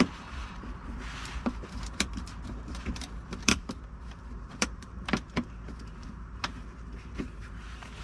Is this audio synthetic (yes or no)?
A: yes